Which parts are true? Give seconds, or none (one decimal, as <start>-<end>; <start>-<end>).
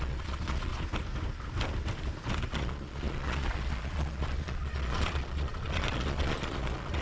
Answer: 0.7-2.4